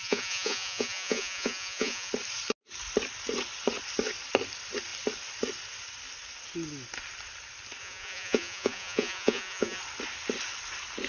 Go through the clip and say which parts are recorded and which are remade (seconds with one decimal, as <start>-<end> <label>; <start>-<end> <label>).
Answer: 0.0-2.1 remade; 2.1-7.8 recorded; 7.8-9.8 remade; 9.8-11.1 recorded